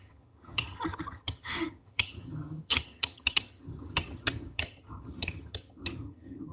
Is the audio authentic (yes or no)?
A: no